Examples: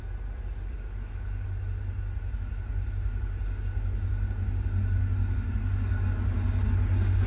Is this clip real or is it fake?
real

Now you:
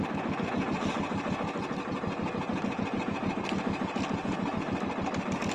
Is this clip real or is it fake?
real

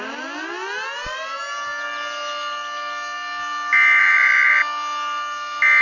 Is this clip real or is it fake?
real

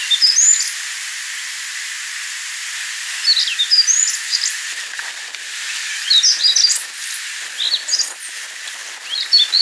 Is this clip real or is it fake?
real